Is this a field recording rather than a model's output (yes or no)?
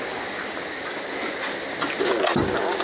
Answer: yes